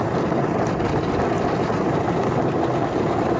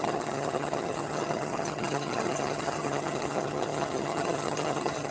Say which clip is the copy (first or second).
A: second